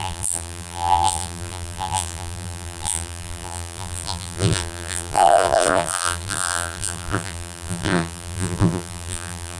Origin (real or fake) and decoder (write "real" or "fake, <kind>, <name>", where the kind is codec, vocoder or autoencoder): fake, vocoder, BigVGAN v2